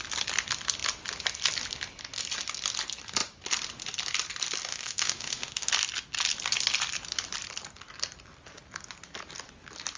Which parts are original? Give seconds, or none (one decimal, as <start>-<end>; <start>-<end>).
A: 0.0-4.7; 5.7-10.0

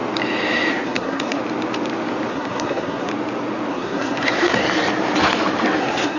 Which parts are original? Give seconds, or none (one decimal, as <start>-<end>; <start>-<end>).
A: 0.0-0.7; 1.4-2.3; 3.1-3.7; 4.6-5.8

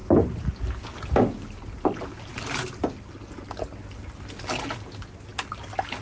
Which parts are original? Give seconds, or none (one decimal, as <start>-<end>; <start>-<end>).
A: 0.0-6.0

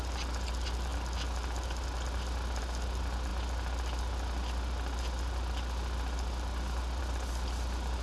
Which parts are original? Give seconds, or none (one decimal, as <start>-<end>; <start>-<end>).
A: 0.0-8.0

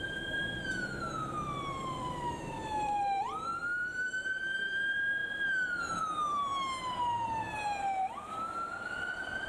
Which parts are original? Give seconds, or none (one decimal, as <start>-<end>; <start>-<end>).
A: 6.5-8.3

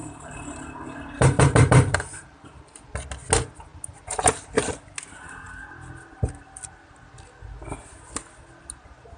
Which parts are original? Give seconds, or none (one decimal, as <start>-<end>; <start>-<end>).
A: 2.8-9.2